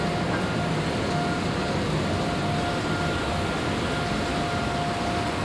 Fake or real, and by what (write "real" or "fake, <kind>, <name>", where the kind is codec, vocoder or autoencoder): real